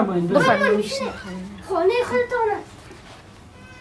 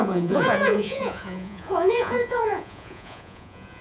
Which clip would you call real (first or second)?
first